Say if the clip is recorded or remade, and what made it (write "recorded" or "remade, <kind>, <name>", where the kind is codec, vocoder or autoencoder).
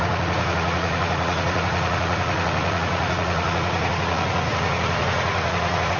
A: remade, vocoder, Vocos